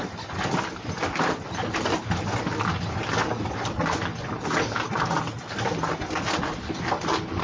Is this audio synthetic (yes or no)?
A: no